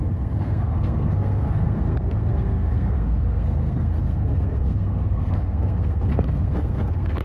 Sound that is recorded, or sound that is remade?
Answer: remade